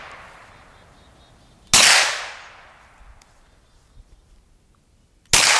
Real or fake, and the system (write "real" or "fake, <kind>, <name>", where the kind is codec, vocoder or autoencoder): real